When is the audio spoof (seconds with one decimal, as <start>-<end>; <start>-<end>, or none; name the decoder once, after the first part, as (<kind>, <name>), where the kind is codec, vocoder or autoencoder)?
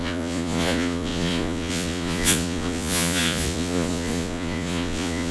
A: 0.0-5.3 (vocoder, Vocos)